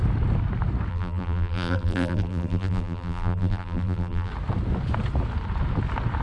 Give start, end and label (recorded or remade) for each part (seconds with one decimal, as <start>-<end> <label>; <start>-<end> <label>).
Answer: 0.0-0.9 recorded; 0.9-4.3 remade; 4.3-6.2 recorded